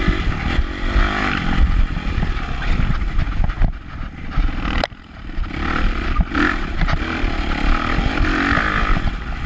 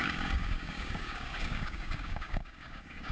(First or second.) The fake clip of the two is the second